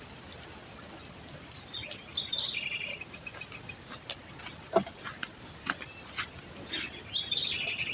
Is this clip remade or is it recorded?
recorded